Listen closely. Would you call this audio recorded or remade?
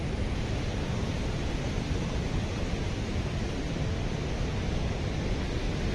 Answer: recorded